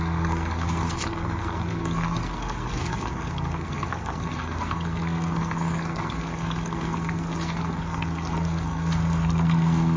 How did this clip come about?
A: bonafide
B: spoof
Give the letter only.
B